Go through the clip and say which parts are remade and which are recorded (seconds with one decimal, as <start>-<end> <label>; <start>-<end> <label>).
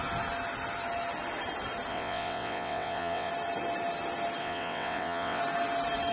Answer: 0.0-1.9 recorded; 1.9-3.3 remade; 3.3-4.4 recorded; 4.4-5.4 remade; 5.4-6.1 recorded